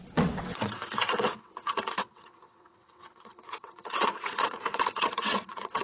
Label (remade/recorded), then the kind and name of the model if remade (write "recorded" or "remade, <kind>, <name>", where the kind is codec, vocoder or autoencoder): remade, vocoder, WaveNeXt